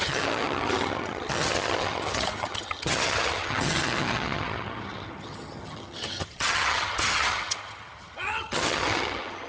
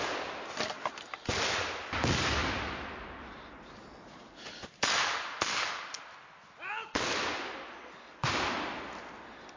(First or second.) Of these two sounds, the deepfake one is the first